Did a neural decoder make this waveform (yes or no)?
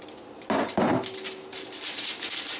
no